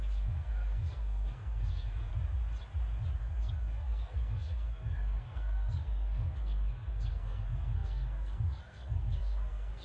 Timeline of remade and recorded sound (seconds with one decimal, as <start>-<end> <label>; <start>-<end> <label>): 0.0-2.1 remade; 2.1-3.2 recorded; 3.2-9.8 remade